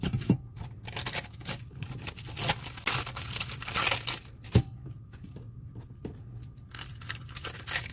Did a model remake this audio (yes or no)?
no